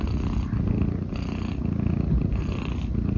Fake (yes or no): no